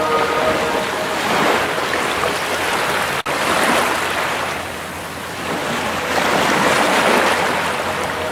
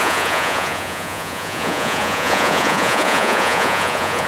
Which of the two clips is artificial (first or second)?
second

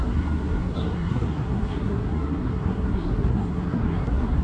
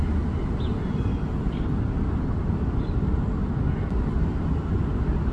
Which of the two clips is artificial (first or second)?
first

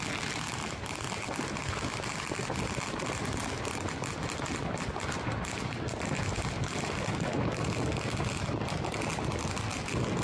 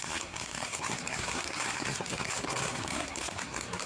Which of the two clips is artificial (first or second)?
second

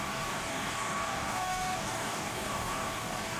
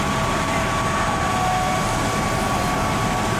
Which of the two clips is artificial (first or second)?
first